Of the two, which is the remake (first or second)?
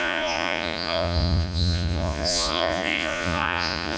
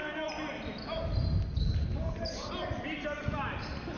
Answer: first